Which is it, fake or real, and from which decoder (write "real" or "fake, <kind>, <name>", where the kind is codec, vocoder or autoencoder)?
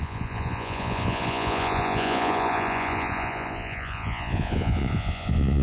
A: fake, vocoder, Vocos